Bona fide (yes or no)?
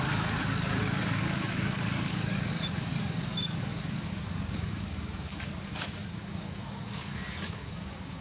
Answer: no